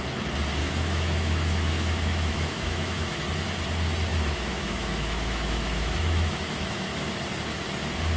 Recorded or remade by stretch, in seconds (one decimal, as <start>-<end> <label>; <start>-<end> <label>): 0.0-0.6 recorded; 0.6-3.2 remade; 3.2-4.1 recorded; 4.1-7.1 remade; 7.1-8.2 recorded